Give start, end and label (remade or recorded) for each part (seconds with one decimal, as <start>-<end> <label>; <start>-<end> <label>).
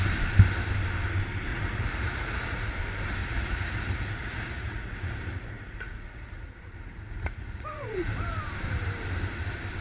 0.0-1.5 recorded; 1.5-2.7 remade; 2.7-3.2 recorded; 3.2-8.4 remade; 8.4-9.8 recorded